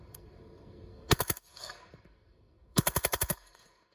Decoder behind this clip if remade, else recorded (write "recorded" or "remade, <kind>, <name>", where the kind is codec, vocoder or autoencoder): remade, codec, SNAC